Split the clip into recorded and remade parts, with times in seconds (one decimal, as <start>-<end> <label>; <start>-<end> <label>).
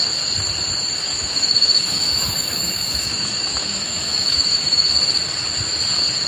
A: 0.0-1.1 recorded; 1.1-4.9 remade; 4.9-6.3 recorded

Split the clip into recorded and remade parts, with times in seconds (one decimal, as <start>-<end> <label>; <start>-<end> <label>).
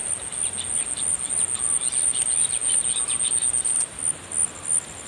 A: 0.0-5.1 recorded